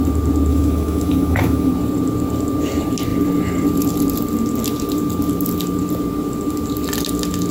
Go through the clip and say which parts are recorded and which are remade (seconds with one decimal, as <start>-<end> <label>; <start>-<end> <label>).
0.0-0.5 recorded; 0.5-1.7 remade; 1.7-7.5 recorded